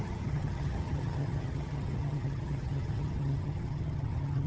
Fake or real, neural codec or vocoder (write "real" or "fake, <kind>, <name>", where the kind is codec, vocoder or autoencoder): fake, vocoder, HiFi-GAN